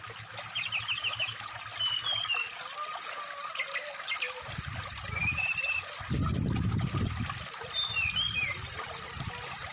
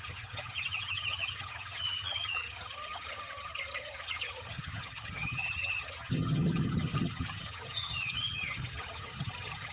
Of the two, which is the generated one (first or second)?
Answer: second